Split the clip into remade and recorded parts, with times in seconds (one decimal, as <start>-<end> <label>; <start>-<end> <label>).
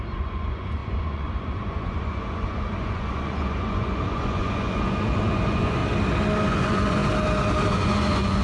0.0-5.8 remade; 5.8-6.5 recorded; 6.5-7.0 remade; 7.0-7.7 recorded; 7.7-8.4 remade